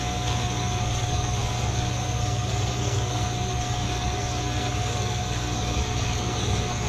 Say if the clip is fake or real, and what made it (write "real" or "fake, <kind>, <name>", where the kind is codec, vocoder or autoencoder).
fake, codec, SNAC